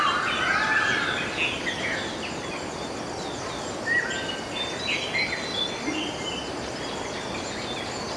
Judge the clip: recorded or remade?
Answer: recorded